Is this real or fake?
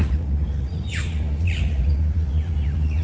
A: fake